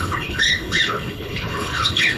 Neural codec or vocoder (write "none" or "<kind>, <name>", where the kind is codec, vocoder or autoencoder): codec, HILCodec